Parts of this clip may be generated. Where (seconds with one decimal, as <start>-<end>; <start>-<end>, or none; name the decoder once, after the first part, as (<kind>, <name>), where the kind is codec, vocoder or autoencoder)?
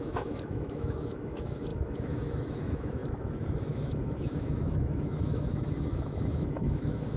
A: 0.0-7.2 (autoencoder, DAC-VAE)